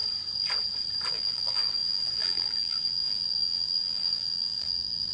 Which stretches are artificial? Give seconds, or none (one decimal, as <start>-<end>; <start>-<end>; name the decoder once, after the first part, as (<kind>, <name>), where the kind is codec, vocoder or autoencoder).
1.1-5.1 (vocoder, BigVGAN v2)